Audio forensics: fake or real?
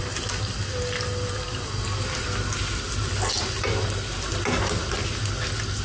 real